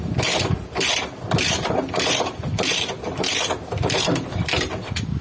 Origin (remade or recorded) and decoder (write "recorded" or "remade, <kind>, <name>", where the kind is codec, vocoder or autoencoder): remade, vocoder, BigVGAN v2